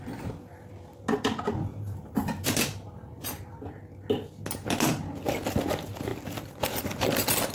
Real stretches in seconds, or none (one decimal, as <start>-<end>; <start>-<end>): 0.0-1.7; 3.4-7.5